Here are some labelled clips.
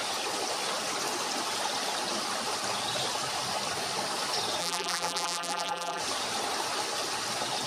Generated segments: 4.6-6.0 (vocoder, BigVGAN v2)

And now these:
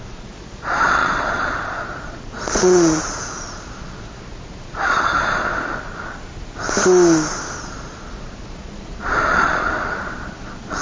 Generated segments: 0.0-5.5 (vocoder, Vocos); 7.6-10.8

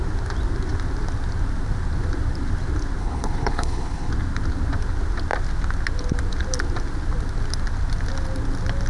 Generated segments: 3.0-4.1 (codec, HILCodec)

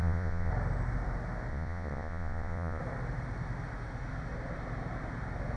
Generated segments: 0.0-0.5 (vocoder, Vocos); 1.5-2.8

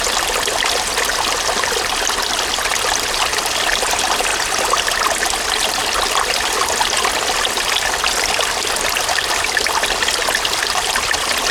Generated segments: none

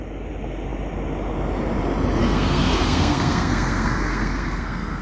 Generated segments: 2.2-5.0 (codec, SNAC)

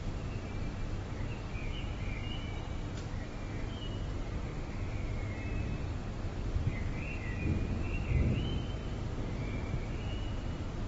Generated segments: 4.5-5.8 (vocoder, BigVGAN v2)

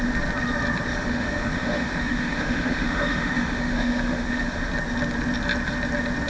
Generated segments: 0.9-4.7 (autoencoder, DAC-VAE)